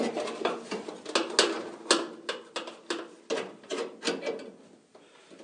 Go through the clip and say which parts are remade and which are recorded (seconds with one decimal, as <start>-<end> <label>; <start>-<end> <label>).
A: 0.0-5.4 recorded